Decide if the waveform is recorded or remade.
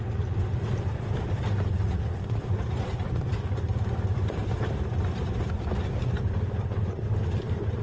remade